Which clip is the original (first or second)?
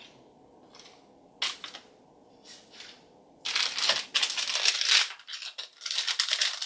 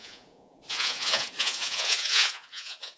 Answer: first